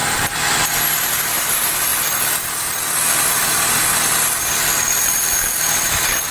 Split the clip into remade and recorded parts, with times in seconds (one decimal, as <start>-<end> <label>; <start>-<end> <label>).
0.0-1.1 recorded; 1.1-1.9 remade; 1.9-5.0 recorded; 5.0-6.3 remade